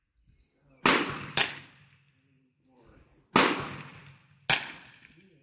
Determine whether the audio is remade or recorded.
recorded